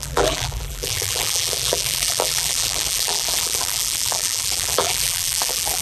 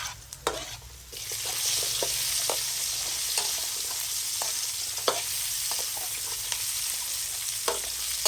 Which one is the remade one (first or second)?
first